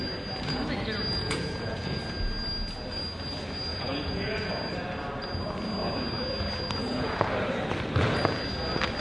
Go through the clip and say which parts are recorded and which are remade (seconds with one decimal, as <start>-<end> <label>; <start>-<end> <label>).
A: 0.0-1.2 recorded; 1.2-2.0 remade; 2.0-3.7 recorded; 3.7-4.5 remade; 4.5-6.8 recorded; 6.8-7.3 remade; 7.3-9.0 recorded